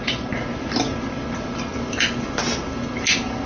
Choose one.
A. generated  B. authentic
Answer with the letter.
B